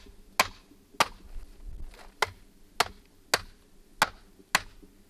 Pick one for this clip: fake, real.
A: real